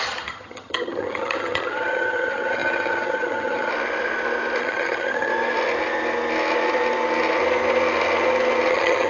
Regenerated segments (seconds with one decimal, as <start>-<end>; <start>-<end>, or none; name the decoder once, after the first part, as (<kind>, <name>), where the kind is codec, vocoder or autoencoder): 0.0-3.7 (vocoder, HiFi-GAN); 4.6-5.3; 8.7-9.1

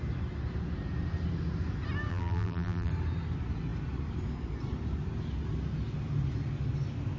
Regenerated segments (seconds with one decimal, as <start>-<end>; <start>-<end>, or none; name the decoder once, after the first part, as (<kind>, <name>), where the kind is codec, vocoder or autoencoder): 2.1-2.9 (vocoder, BigVGAN v2)

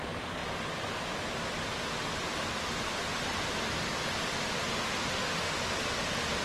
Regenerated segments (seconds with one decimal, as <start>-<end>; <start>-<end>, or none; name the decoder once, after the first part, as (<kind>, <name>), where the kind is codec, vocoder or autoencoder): 5.0-5.6 (autoencoder, DAC-VAE)

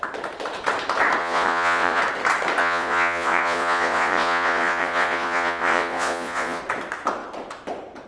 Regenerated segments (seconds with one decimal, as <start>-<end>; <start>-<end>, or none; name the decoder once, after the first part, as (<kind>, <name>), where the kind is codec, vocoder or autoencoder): 1.2-2.0 (vocoder, Vocos); 2.6-6.6

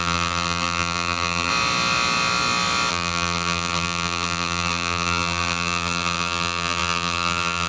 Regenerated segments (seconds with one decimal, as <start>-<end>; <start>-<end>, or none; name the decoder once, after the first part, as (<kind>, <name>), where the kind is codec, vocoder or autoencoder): 0.0-1.5 (vocoder, BigVGAN v2); 2.9-7.7

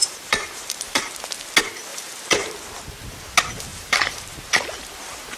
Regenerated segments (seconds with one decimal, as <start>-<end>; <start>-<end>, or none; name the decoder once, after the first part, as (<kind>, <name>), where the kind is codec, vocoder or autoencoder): 0.0-1.1 (vocoder, BigVGAN v2); 1.9-2.5; 3.7-4.6

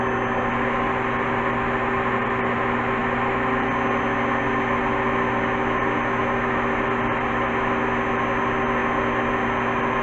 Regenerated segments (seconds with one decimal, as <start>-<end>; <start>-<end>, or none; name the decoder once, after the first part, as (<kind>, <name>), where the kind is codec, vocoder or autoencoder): none

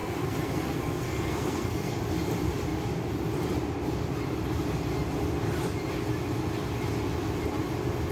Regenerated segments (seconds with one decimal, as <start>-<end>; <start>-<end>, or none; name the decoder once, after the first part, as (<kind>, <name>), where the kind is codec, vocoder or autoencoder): 0.0-2.0 (codec, SNAC)